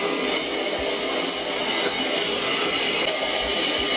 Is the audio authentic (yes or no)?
yes